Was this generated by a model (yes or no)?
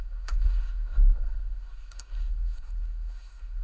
yes